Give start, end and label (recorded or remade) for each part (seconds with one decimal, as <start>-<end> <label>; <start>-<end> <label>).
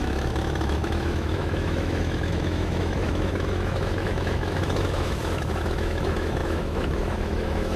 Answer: 0.0-7.8 remade